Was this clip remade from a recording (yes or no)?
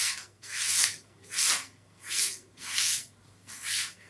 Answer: yes